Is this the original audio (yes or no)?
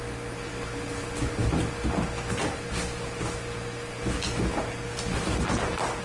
yes